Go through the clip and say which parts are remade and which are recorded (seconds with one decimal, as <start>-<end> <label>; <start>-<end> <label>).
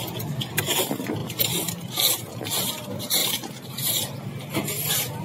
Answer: 0.0-1.2 recorded; 1.2-1.9 remade; 1.9-5.2 recorded